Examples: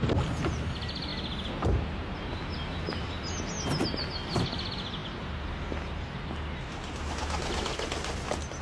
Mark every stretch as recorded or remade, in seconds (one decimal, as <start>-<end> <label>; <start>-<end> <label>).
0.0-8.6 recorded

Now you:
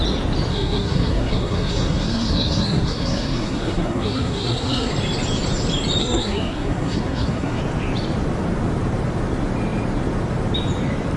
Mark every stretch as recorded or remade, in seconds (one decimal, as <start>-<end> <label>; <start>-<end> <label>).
0.0-0.5 recorded; 0.5-4.9 remade; 4.9-6.0 recorded; 6.0-7.6 remade; 7.6-11.2 recorded

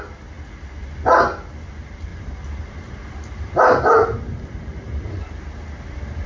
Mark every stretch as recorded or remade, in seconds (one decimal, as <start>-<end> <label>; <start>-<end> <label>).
0.0-2.1 recorded; 2.1-6.3 remade

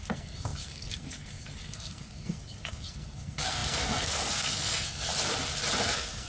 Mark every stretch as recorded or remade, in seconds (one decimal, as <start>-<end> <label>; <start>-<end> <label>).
0.0-5.1 remade; 5.1-5.8 recorded; 5.8-6.3 remade

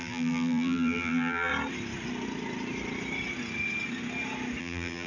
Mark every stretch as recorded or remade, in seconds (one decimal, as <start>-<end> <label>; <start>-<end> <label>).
0.0-1.5 remade; 1.5-4.6 recorded; 4.6-5.1 remade